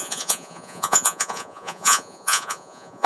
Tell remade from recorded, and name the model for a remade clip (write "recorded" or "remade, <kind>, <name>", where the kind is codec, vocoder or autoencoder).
remade, vocoder, Vocos